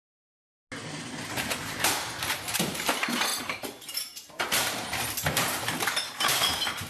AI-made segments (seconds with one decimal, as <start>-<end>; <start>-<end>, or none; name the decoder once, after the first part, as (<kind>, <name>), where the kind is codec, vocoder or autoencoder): 0.9-6.9 (vocoder, BigVGAN v2)